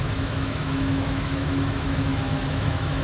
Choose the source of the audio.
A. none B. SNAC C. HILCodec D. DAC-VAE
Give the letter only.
D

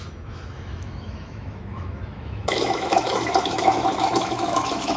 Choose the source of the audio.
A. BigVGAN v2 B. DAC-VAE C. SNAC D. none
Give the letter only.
B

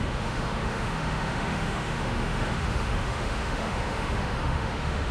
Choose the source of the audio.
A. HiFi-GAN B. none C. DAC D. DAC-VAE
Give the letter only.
D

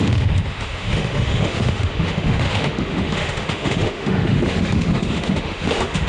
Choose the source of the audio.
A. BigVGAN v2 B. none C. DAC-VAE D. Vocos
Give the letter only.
C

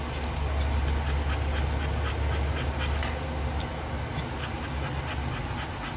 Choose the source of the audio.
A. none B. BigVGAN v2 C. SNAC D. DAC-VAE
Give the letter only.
A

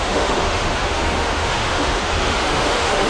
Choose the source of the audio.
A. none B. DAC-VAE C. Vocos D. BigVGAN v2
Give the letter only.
B